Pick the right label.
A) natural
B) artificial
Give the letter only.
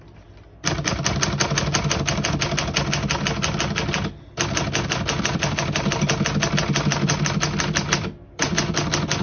A